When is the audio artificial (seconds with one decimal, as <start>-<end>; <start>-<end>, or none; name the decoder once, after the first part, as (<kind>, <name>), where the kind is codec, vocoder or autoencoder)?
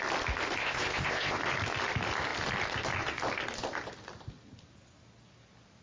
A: 0.6-1.4 (codec, ZipCodec)